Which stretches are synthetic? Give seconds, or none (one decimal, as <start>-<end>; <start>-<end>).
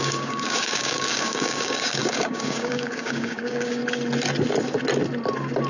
0.0-3.8